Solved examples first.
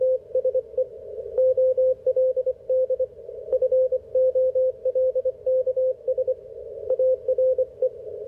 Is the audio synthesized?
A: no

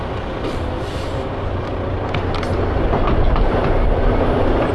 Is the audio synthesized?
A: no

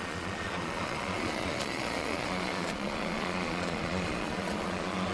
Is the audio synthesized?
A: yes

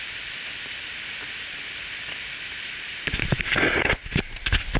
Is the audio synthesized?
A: no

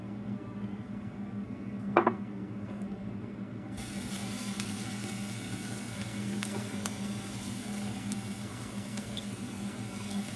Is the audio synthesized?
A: yes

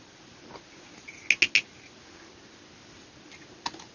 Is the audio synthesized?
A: no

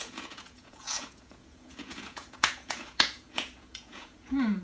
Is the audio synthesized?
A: yes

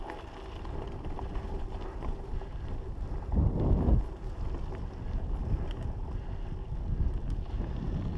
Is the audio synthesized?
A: no